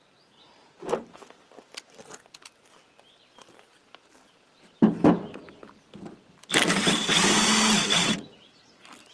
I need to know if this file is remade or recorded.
recorded